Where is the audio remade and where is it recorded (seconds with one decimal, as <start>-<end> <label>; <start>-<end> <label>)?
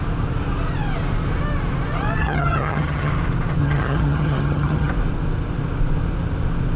0.0-2.2 recorded; 2.2-3.1 remade; 3.1-3.6 recorded; 3.6-4.9 remade; 4.9-6.8 recorded